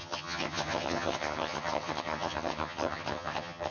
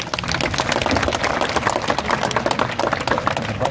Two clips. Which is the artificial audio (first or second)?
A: first